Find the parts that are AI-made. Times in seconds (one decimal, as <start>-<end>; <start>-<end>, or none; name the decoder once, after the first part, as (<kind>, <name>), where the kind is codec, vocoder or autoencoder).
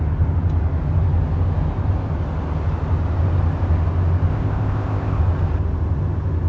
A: 4.3-5.2 (codec, ZipCodec)